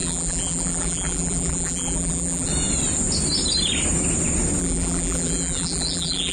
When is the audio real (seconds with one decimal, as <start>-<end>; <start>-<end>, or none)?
2.5-4.6